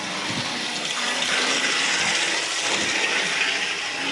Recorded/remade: recorded